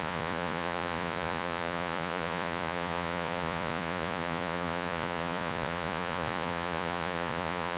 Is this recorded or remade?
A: remade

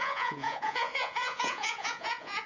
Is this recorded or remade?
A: remade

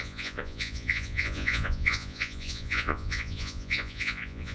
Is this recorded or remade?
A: remade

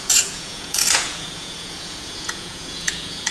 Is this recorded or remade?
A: remade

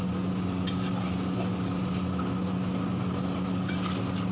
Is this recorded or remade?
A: recorded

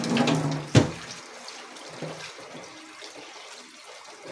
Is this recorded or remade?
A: recorded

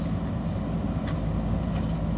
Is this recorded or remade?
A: recorded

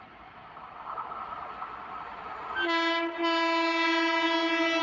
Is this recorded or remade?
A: recorded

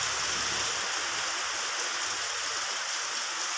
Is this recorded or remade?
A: recorded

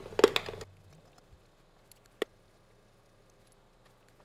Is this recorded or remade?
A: recorded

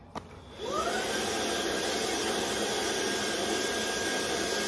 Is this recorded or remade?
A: recorded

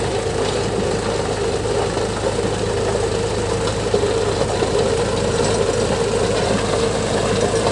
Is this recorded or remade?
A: recorded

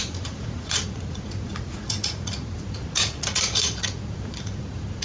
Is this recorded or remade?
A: remade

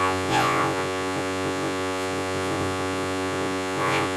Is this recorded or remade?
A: remade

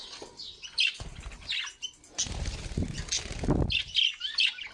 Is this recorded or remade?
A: recorded